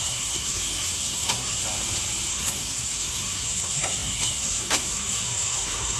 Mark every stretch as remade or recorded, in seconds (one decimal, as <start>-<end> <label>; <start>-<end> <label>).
0.0-1.6 remade; 1.6-2.3 recorded; 2.3-6.0 remade